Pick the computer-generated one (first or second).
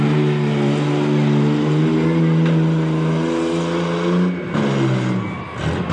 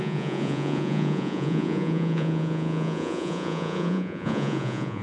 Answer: second